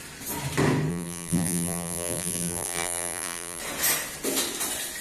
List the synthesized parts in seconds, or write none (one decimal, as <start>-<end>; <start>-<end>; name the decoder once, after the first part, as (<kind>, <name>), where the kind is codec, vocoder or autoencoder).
0.9-3.6 (vocoder, BigVGAN v2)